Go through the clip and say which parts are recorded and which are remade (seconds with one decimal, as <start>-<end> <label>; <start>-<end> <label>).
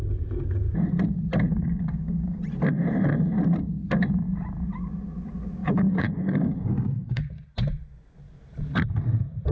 0.0-1.5 recorded; 1.5-2.4 remade; 2.4-5.6 recorded; 5.6-7.2 remade; 7.2-9.5 recorded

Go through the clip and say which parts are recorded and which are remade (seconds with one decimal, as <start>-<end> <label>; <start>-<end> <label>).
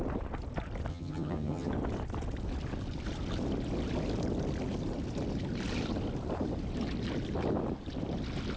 0.0-0.9 recorded; 0.9-1.7 remade; 1.7-8.6 recorded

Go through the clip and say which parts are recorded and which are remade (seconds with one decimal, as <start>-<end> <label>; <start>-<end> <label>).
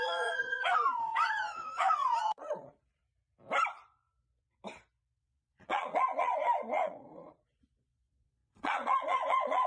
0.0-3.0 remade; 3.0-5.2 recorded; 5.2-9.7 remade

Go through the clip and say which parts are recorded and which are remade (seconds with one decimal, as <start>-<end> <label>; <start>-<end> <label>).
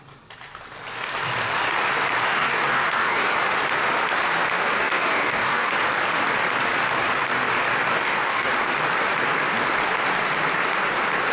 0.0-2.2 recorded; 2.2-3.3 remade; 3.3-4.8 recorded; 4.8-5.7 remade; 5.7-7.9 recorded; 7.9-8.5 remade; 8.5-11.3 recorded